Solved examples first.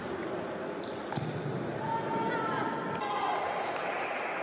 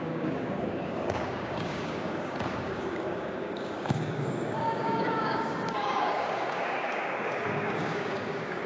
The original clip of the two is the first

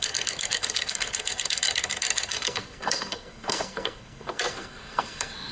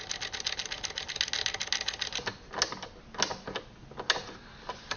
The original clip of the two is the second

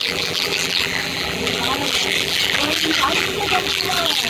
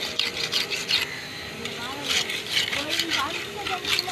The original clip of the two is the second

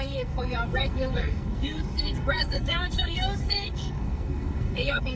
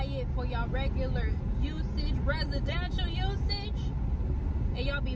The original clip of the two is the second